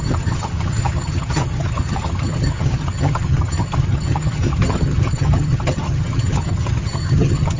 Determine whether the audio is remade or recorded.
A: remade